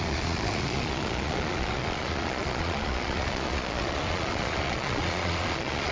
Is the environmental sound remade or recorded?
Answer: remade